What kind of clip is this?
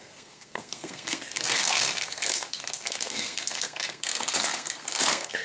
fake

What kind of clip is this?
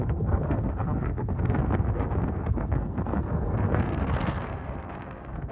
fake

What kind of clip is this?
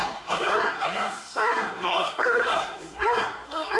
fake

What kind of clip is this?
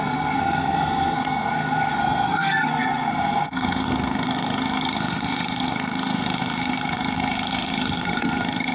fake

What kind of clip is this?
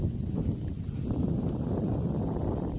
real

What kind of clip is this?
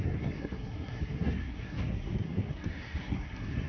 fake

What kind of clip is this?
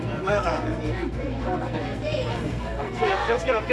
fake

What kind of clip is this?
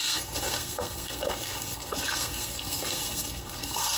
fake